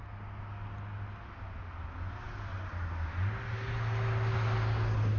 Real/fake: real